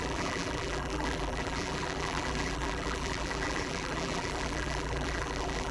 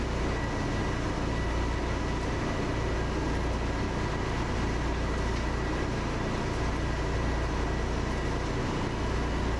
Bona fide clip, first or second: second